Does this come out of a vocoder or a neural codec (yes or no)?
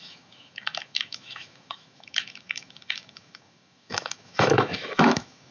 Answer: yes